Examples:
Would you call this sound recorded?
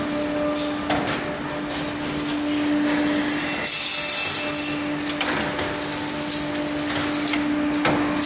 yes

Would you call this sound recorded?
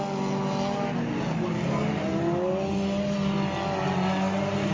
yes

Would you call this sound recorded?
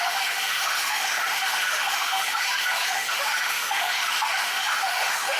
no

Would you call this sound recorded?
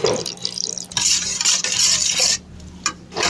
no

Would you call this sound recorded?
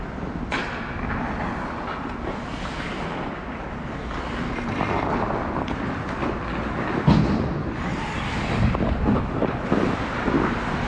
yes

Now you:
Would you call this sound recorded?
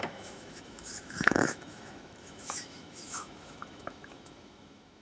no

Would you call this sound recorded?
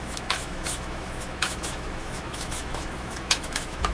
no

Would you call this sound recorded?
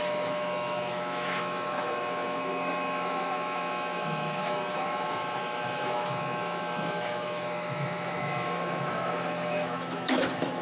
no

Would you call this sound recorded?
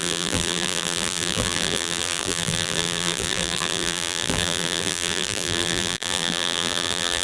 no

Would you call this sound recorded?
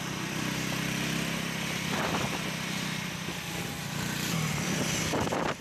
no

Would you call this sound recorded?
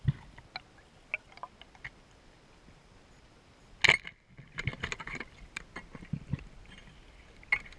yes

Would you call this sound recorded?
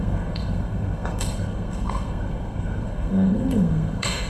no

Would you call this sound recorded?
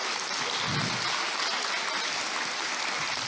yes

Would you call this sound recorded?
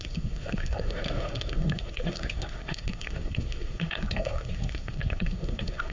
no